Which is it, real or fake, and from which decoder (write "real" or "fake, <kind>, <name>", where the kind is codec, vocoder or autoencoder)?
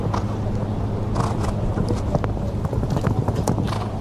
real